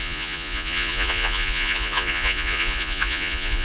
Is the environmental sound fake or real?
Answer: fake